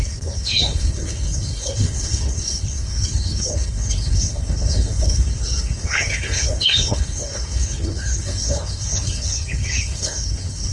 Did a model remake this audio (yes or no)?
yes